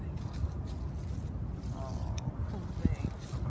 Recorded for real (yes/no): yes